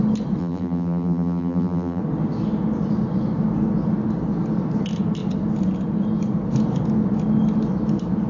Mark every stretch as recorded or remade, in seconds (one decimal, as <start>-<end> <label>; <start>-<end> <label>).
0.0-0.4 recorded; 0.4-2.0 remade; 2.0-8.3 recorded